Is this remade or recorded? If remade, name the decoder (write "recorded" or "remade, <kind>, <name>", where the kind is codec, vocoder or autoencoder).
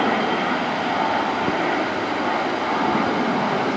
recorded